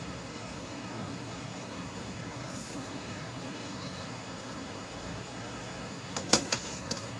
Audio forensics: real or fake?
fake